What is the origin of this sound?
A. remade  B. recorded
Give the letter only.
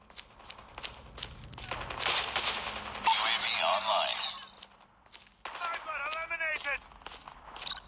B